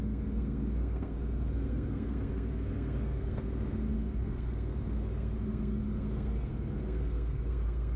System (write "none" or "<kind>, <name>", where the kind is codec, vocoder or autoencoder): codec, SNAC